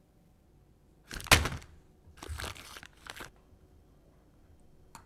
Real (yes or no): yes